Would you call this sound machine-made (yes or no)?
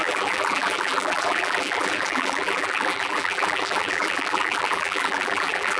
yes